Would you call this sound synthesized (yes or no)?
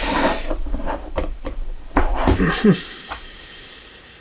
yes